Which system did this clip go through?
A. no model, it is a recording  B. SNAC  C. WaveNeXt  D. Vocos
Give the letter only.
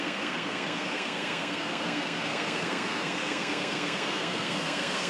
B